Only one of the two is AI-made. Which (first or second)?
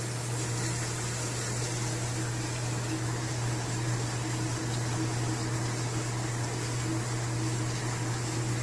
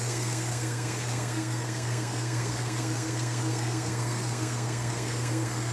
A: second